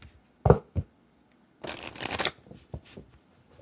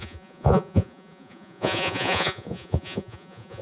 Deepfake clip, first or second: second